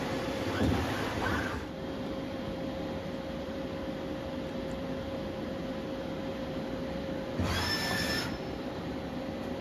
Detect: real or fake fake